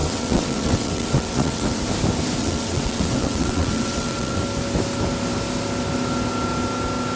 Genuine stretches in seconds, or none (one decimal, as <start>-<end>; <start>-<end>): 1.8-2.4; 4.4-7.2